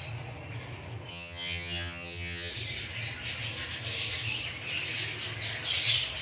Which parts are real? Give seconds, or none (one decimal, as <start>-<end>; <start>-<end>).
0.0-1.1; 2.5-6.2